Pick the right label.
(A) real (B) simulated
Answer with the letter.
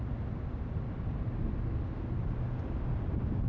A